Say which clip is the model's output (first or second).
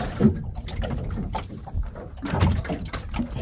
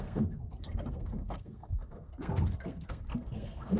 second